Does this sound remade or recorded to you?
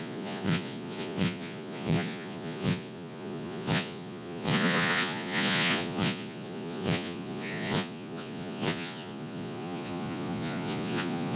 remade